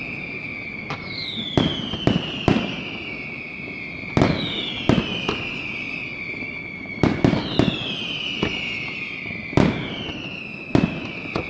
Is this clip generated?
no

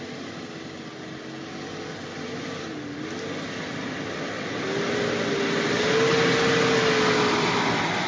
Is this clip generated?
no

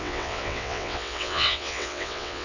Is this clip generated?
yes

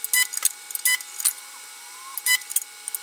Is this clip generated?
no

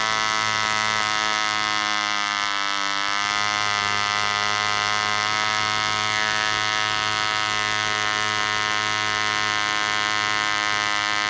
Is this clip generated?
no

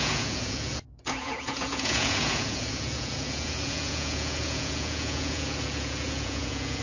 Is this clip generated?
yes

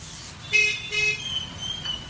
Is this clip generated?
no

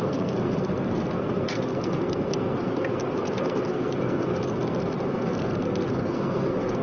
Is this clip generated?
yes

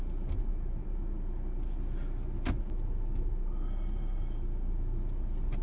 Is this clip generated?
no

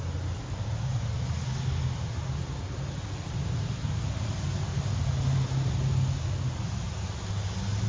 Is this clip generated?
no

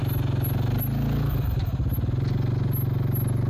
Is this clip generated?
no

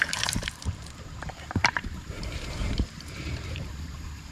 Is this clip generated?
yes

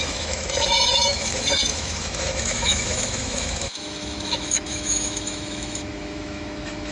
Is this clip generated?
yes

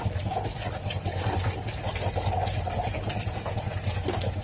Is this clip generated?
no